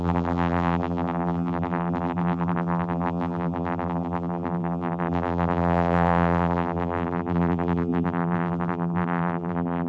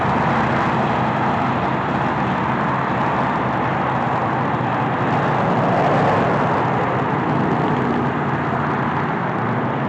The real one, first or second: second